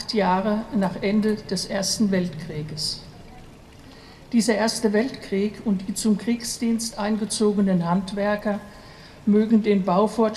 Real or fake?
real